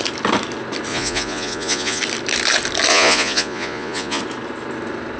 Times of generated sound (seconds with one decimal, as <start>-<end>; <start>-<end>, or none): 0.9-2.0; 2.9-4.2